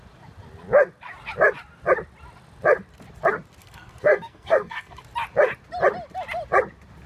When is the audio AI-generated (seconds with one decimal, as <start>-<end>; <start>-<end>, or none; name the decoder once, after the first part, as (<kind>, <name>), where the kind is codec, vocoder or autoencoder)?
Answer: 3.6-5.0 (codec, SNAC)

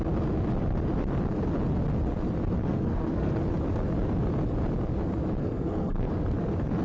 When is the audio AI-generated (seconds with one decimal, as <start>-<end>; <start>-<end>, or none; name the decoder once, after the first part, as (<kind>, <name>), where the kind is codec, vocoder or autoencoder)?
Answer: 2.6-3.3 (codec, SNAC); 5.4-6.1

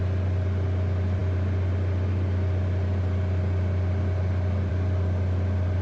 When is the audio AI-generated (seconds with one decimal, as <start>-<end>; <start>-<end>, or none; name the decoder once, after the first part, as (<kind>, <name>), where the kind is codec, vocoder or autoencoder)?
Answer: none

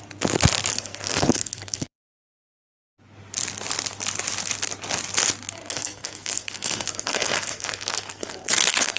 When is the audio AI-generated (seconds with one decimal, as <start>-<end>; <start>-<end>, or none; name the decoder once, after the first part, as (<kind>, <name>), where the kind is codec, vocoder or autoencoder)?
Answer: 0.7-2.4 (codec, SNAC); 5.6-9.0

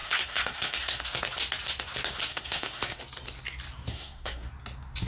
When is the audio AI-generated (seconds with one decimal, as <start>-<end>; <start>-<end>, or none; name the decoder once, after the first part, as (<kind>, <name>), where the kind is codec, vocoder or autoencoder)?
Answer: 0.0-1.0 (codec, SNAC); 2.3-3.0; 3.9-4.5